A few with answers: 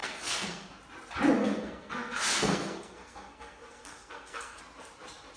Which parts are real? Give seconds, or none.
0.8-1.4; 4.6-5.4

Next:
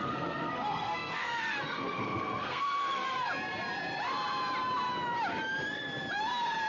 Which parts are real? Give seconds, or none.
3.3-6.7

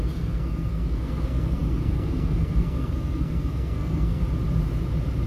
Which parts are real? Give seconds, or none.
4.2-5.3

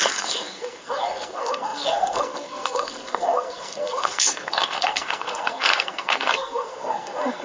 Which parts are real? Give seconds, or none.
none

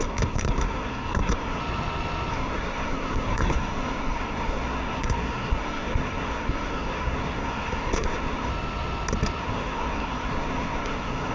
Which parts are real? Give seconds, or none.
1.6-2.3; 8.5-9.4

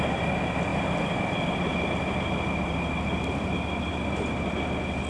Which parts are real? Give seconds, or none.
0.0-5.1

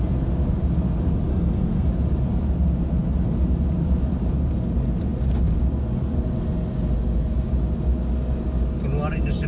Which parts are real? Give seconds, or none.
0.0-1.3; 1.9-9.5

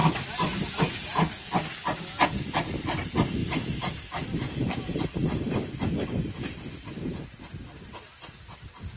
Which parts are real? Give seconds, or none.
0.0-9.0